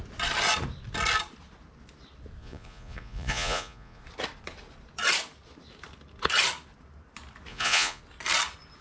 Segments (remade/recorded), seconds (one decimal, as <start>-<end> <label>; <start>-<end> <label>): 0.0-2.4 recorded; 2.4-4.0 remade; 4.0-7.5 recorded; 7.5-8.0 remade; 8.0-8.8 recorded

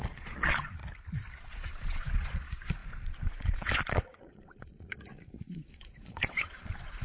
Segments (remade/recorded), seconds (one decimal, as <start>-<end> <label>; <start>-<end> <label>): 0.0-0.8 remade; 0.8-1.4 recorded; 1.4-7.0 remade

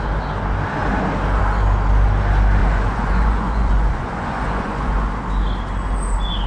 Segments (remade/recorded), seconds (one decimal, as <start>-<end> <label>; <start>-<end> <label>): 0.0-2.6 recorded; 2.6-5.1 remade; 5.1-6.5 recorded

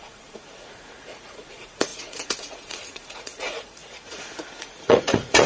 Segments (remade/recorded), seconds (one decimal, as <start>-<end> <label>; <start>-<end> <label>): 0.0-5.5 remade